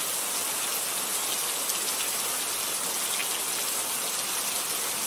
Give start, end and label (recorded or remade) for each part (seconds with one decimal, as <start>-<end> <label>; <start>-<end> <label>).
0.0-5.1 recorded